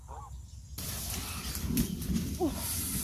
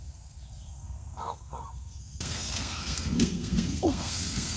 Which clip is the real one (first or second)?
first